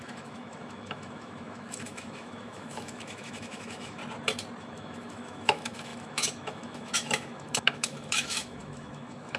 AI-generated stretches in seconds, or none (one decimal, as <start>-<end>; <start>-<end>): 0.0-4.0; 4.6-9.4